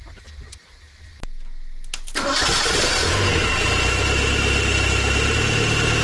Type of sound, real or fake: real